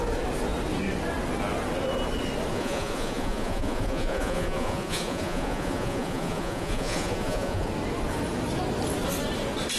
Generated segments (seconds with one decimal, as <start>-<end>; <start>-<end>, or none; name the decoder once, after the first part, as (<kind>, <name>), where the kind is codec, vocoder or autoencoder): 2.5-7.7 (vocoder, Vocos)